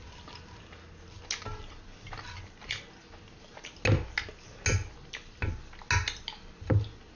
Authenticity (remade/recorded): recorded